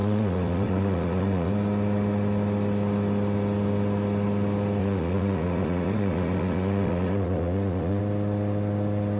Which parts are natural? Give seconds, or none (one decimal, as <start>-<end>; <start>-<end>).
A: 1.5-4.8; 8.0-9.2